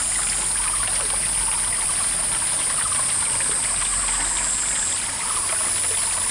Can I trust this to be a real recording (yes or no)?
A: yes